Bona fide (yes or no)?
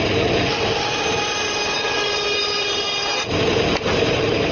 yes